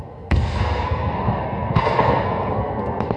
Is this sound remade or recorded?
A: remade